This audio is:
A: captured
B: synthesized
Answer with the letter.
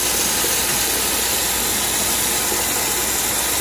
A